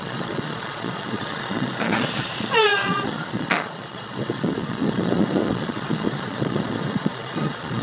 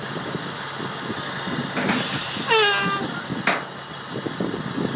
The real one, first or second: second